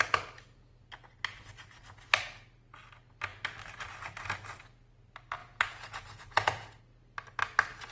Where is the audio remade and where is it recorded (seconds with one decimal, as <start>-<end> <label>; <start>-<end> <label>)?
0.0-5.4 recorded; 5.4-6.8 remade; 6.8-7.9 recorded